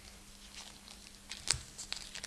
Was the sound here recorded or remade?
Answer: recorded